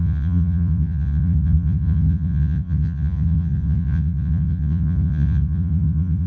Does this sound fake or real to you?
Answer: fake